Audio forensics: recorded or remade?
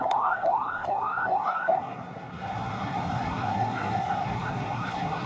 remade